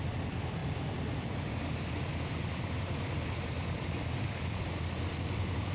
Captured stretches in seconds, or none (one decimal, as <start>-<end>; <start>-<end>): none